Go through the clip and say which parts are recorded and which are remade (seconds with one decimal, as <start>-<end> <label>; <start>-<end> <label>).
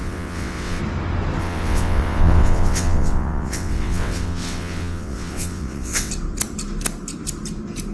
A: 0.0-0.8 remade; 0.8-1.4 recorded; 1.4-6.1 remade; 6.1-7.9 recorded